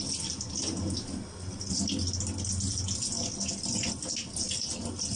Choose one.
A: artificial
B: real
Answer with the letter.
B